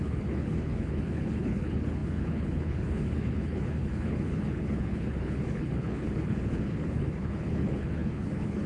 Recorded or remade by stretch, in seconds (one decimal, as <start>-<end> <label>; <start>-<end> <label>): 0.0-8.7 remade